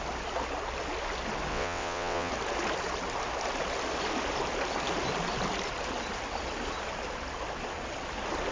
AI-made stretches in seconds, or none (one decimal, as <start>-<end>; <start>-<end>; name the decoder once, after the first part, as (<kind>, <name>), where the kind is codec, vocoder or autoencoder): 1.5-2.3 (vocoder, WaveNeXt)